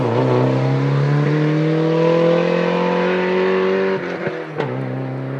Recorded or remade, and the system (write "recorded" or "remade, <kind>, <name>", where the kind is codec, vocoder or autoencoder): recorded